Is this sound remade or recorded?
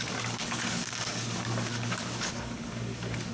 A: remade